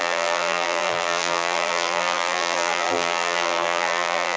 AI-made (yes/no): yes